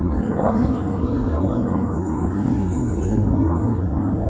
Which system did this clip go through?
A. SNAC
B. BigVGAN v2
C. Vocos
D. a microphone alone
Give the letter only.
A